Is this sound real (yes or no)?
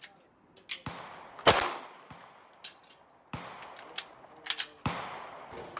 yes